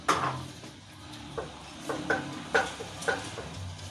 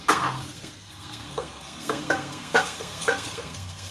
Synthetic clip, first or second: second